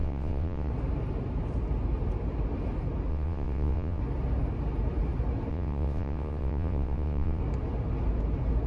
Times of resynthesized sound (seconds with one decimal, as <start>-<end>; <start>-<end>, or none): 0.0-0.7; 3.1-4.0; 5.5-7.4